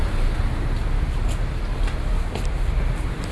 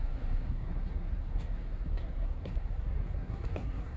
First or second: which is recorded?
first